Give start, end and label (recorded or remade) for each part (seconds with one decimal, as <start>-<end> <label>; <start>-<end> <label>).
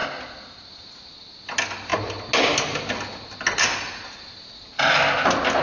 0.0-5.6 recorded